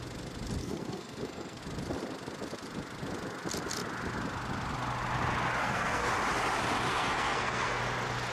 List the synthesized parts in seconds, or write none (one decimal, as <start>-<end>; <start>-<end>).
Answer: 0.6-1.6; 5.6-6.1; 6.9-7.8